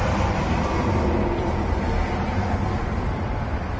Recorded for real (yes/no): yes